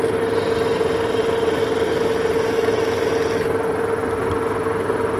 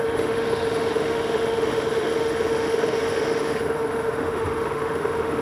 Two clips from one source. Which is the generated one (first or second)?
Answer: second